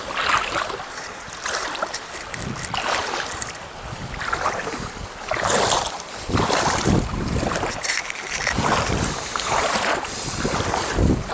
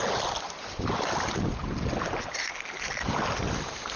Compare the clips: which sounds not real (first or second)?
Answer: first